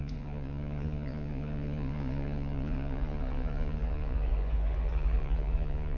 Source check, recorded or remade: remade